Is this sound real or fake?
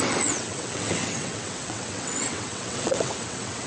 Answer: fake